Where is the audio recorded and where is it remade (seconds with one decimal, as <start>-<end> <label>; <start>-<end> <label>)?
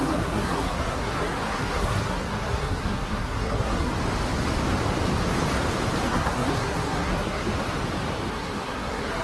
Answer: 0.0-3.9 remade; 3.9-6.0 recorded; 6.0-7.5 remade; 7.5-8.3 recorded; 8.3-9.2 remade